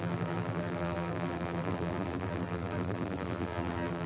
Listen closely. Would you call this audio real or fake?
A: fake